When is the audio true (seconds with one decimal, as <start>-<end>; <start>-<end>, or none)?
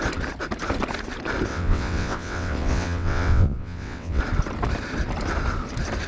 0.0-1.5; 4.2-6.1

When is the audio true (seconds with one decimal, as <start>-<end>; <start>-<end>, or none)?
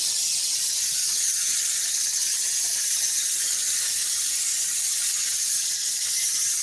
0.0-1.5; 2.4-4.8; 6.1-6.6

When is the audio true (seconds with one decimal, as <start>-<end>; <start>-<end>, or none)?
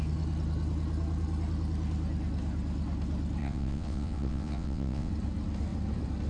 0.0-3.4; 5.1-6.3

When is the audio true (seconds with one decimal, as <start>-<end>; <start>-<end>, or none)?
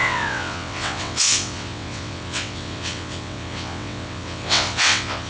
none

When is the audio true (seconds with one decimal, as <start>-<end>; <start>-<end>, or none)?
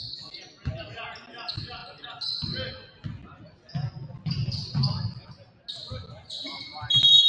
0.0-7.3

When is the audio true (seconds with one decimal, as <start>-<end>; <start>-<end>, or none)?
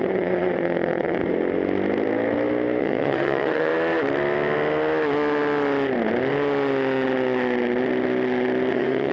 1.2-2.8; 3.7-8.7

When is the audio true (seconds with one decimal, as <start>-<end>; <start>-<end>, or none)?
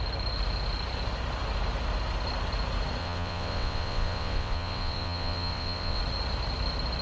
0.0-3.0; 6.0-7.0